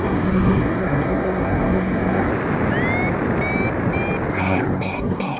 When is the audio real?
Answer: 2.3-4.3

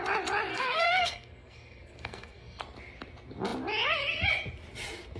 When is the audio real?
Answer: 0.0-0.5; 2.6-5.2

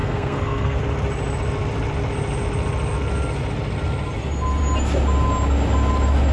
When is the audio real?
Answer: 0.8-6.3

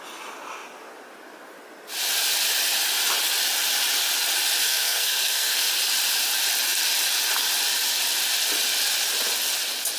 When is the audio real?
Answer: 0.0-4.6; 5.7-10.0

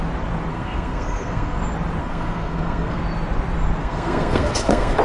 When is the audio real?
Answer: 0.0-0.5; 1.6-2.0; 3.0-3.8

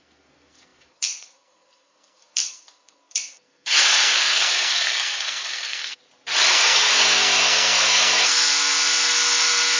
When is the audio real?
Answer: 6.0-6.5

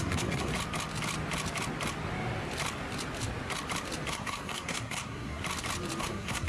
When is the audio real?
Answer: 0.5-4.1; 5.4-6.0